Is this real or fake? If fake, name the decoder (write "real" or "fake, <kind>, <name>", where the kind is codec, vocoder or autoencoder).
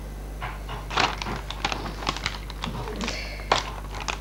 real